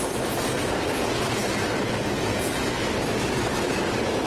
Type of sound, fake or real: real